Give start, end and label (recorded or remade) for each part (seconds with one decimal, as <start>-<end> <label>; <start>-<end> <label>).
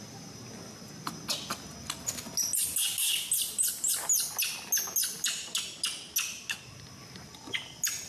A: 0.0-8.1 recorded